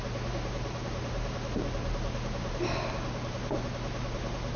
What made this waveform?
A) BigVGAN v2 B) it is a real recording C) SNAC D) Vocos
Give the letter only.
B